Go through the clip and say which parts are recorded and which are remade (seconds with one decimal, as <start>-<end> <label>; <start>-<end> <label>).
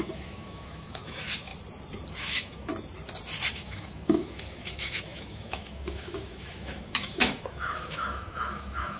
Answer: 0.0-1.5 remade; 1.5-2.1 recorded; 2.1-2.7 remade; 2.7-3.5 recorded; 3.5-9.0 remade